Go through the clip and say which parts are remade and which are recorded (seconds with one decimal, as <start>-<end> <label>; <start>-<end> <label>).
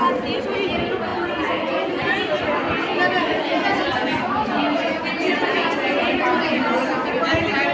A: 0.0-7.7 recorded